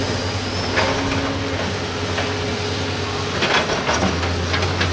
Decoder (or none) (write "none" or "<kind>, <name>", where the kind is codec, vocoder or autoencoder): none